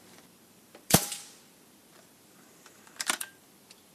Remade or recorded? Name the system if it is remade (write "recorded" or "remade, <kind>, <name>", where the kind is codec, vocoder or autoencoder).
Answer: remade, vocoder, BigVGAN v2